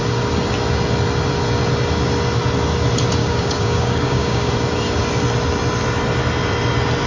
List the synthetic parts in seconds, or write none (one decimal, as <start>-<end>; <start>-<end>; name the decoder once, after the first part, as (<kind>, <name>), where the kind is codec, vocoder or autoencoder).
3.2-4.5 (codec, DAC)

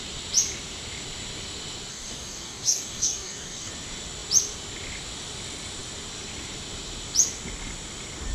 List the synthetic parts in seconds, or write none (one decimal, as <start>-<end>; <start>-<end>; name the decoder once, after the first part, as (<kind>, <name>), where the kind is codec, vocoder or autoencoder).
1.9-3.7 (codec, DAC)

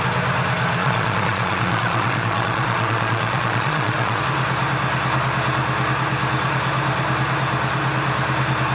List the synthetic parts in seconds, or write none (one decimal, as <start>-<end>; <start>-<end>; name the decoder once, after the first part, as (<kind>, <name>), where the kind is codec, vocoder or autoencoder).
0.8-4.2 (vocoder, Vocos)

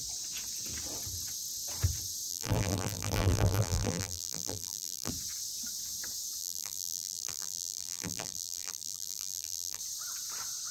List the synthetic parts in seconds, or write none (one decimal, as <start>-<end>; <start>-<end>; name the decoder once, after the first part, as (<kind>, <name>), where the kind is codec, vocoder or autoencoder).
2.3-5.1 (vocoder, BigVGAN v2); 6.4-9.8

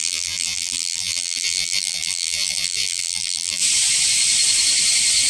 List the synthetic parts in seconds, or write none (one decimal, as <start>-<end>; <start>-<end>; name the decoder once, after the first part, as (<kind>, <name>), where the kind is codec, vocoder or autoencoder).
0.0-3.6 (vocoder, BigVGAN v2)

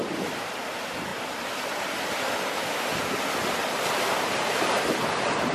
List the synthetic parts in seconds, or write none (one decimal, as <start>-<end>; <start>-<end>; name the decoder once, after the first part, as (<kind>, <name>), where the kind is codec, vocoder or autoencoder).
1.1-1.7 (vocoder, BigVGAN v2); 3.6-4.7

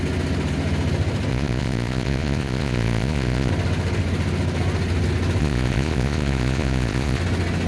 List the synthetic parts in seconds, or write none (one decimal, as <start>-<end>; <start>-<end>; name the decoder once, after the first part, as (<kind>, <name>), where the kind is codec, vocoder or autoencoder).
1.3-3.5 (vocoder, Vocos); 5.4-7.2

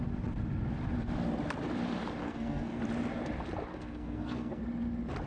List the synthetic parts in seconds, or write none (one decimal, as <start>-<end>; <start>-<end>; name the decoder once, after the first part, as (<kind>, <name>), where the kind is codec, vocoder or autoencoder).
2.2-2.8 (codec, SNAC); 3.7-4.6